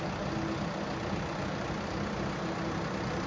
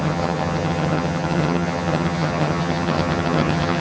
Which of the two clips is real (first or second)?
first